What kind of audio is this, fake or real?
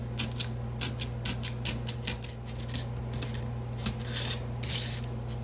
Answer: real